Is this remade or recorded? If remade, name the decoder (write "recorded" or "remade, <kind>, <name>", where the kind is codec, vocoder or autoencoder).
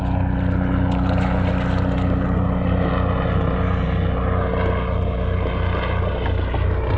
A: recorded